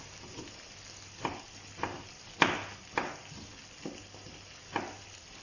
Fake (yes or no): no